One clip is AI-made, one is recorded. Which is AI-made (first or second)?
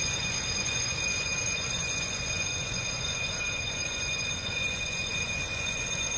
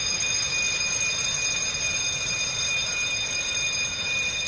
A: first